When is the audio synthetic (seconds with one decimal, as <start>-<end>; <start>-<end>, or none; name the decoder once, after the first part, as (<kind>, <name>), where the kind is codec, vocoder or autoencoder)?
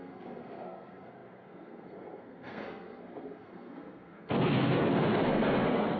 0.0-6.0 (codec, SNAC)